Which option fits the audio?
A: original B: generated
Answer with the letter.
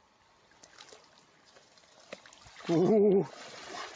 A